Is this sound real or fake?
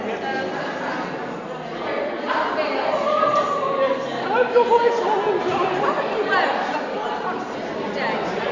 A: real